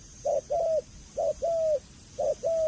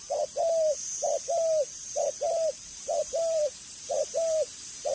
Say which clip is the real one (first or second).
first